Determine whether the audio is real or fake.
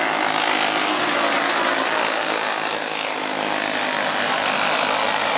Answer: real